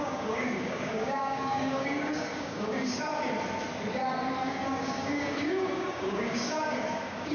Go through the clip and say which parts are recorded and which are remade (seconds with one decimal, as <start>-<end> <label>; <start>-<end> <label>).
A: 0.0-3.1 remade; 3.1-4.4 recorded; 4.4-7.3 remade